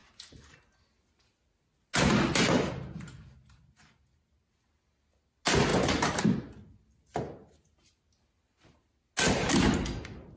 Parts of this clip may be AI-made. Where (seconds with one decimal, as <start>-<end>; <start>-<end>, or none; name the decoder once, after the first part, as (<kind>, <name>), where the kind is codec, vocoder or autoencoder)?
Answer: none